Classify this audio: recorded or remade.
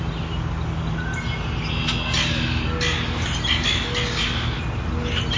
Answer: recorded